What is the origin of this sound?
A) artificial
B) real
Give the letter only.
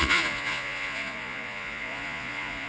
A